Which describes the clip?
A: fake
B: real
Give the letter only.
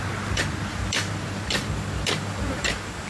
A